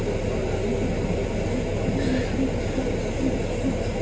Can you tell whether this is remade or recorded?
recorded